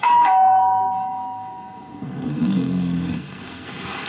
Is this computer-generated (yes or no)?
yes